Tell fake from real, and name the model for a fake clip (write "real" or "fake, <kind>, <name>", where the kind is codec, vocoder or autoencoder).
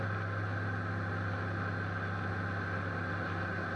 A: real